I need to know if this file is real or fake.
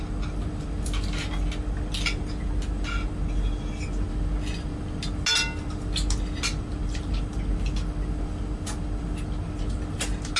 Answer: real